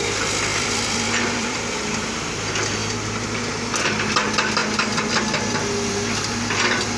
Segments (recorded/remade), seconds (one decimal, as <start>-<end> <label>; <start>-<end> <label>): 0.0-0.5 recorded; 0.5-2.4 remade; 2.4-7.0 recorded